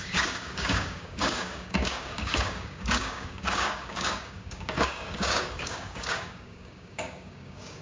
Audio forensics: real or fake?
fake